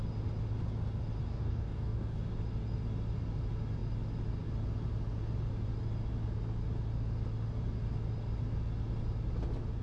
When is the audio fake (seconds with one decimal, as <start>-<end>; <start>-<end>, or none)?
1.3-2.2